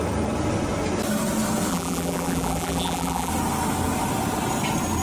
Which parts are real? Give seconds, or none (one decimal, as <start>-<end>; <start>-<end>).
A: 0.0-1.7; 3.3-5.0

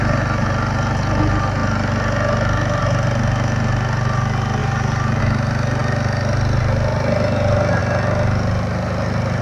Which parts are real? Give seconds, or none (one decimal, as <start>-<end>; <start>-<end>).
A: 0.0-4.6; 5.2-9.4

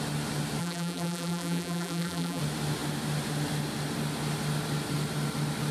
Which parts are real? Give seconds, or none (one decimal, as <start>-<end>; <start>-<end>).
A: 0.0-0.6; 2.4-5.7

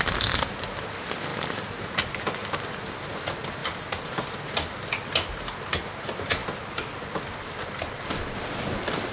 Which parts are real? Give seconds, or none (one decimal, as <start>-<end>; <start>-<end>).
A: 0.0-1.3; 2.2-3.6; 4.3-9.1